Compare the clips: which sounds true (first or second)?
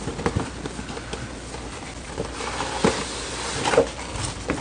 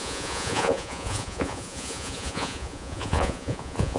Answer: first